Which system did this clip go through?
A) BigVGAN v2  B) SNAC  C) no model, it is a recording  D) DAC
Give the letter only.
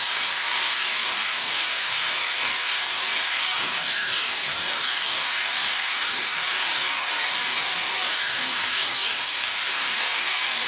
D